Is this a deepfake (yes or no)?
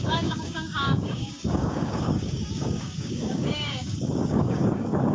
yes